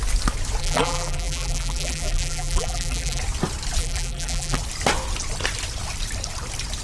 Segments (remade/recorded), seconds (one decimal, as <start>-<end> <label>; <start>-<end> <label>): 0.0-0.6 recorded; 0.6-3.2 remade; 3.2-3.8 recorded; 3.8-4.6 remade; 4.6-6.8 recorded

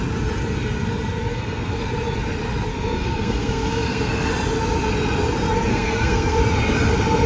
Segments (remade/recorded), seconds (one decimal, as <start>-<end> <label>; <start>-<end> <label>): 0.0-1.3 recorded; 1.3-1.8 remade; 1.8-2.7 recorded; 2.7-4.3 remade; 4.3-5.7 recorded; 5.7-6.4 remade; 6.4-7.3 recorded

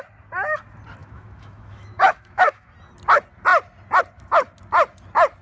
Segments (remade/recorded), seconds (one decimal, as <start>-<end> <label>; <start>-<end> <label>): 0.0-1.0 recorded; 1.0-2.7 remade; 2.7-5.4 recorded

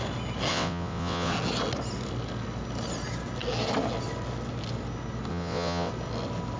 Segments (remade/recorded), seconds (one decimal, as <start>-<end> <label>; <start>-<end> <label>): 0.0-0.5 recorded; 0.5-1.3 remade; 1.3-5.3 recorded; 5.3-5.9 remade; 5.9-6.6 recorded

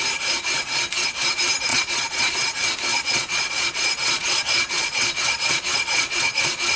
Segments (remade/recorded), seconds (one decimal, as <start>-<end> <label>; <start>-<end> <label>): 0.0-1.7 recorded; 1.7-2.3 remade; 2.3-2.9 recorded; 2.9-6.8 remade

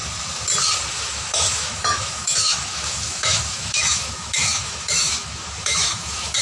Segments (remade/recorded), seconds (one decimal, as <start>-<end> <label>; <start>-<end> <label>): 0.0-0.9 recorded; 0.9-6.4 remade

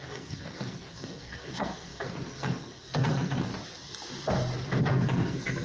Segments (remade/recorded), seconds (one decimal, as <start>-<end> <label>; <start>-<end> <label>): 0.0-3.5 remade; 3.5-4.8 recorded; 4.8-5.6 remade